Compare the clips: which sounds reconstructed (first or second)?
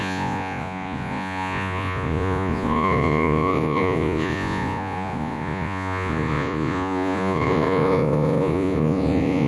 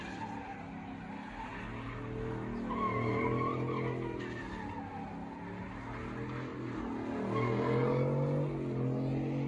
first